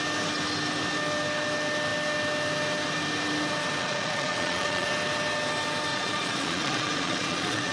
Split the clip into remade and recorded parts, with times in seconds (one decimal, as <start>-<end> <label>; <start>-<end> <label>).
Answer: 0.0-3.8 recorded; 3.8-4.9 remade; 4.9-5.9 recorded; 5.9-7.7 remade